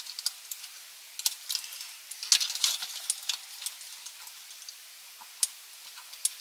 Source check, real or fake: real